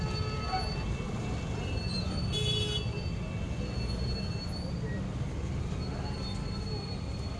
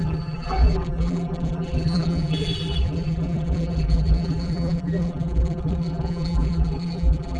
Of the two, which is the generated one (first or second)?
second